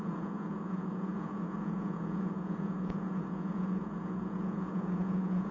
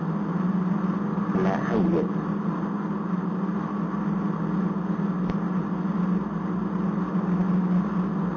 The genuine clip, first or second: second